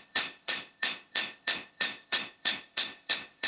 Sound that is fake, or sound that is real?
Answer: fake